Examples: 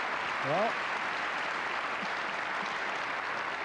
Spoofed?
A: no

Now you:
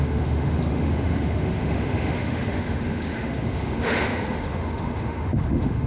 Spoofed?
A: yes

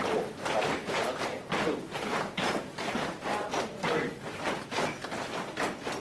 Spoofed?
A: no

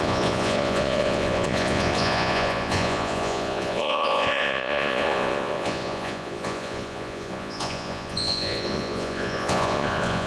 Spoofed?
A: yes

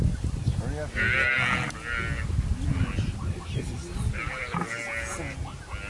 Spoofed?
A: no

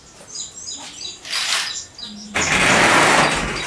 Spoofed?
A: no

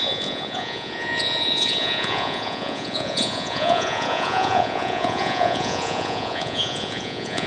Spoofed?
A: yes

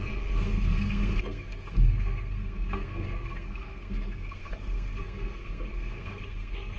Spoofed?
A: yes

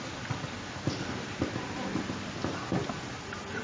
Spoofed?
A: no